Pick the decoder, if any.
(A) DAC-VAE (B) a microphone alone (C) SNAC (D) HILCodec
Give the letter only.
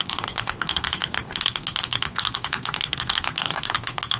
C